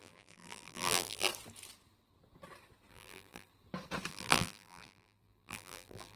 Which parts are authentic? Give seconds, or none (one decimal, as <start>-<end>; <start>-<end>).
1.3-2.9; 3.5-4.1